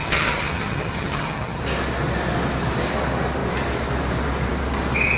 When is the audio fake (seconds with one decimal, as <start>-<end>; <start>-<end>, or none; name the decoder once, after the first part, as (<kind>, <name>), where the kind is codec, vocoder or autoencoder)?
0.0-1.6 (vocoder, HiFi-GAN)